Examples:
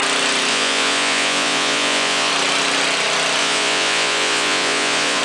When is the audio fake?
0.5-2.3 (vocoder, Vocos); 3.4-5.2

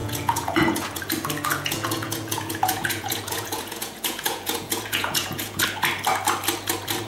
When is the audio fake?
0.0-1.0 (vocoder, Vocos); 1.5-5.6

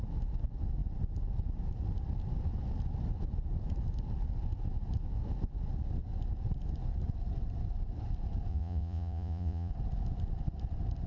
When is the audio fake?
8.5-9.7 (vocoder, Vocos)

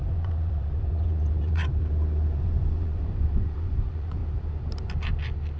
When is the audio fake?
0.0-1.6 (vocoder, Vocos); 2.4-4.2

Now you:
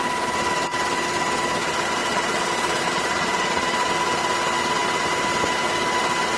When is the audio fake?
2.0-3.9 (vocoder, Vocos)

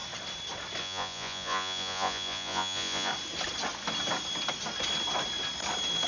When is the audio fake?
0.8-3.1 (vocoder, Vocos)

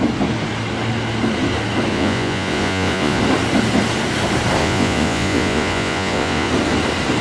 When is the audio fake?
1.9-3.2 (vocoder, Vocos); 4.6-6.5